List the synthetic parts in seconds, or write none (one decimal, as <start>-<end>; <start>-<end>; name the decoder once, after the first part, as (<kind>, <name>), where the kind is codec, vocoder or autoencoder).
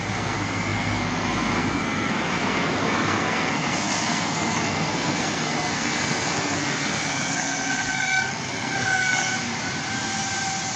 0.0-9.3 (codec, SNAC)